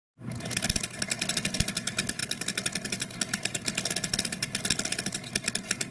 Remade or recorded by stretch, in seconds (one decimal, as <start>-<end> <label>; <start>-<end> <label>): 0.0-5.9 recorded